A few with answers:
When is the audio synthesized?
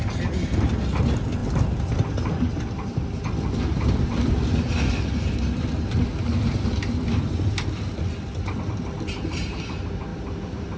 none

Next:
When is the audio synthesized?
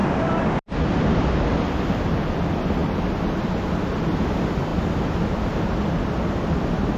none